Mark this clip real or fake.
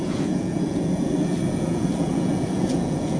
fake